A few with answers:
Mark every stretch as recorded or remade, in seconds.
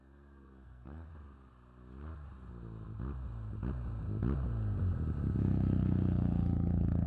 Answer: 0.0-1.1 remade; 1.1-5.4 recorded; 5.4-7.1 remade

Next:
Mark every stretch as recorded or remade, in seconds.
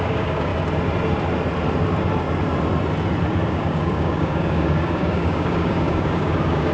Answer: 0.0-0.5 remade; 0.5-3.5 recorded; 3.5-6.7 remade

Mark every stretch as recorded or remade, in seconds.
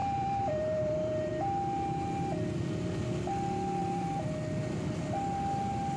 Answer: 0.0-1.3 remade; 1.3-3.8 recorded; 3.8-4.3 remade; 4.3-6.0 recorded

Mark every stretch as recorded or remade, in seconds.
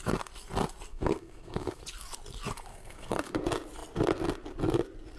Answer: 0.0-0.9 recorded; 0.9-1.8 remade; 1.8-2.7 recorded; 2.7-3.4 remade; 3.4-5.2 recorded